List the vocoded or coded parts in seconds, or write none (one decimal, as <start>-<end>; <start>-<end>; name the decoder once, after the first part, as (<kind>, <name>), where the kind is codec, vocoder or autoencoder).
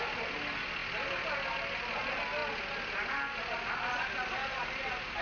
none